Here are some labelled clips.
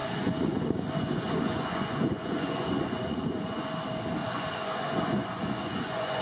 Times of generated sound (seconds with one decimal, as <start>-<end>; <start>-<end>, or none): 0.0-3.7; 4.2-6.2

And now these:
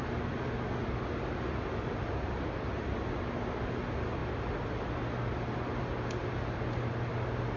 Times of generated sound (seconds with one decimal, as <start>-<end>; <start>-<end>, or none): none

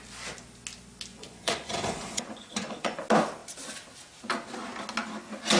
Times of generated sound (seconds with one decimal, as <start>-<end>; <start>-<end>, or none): 1.1-3.0

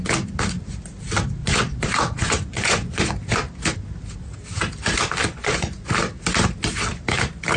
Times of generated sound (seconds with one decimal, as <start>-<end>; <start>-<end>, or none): 1.4-3.1; 5.3-5.9

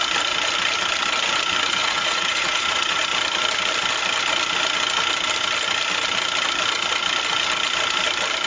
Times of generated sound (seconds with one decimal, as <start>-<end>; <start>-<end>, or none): 1.8-3.0

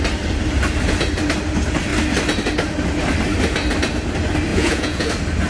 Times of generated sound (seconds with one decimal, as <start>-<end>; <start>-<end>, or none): 4.5-5.1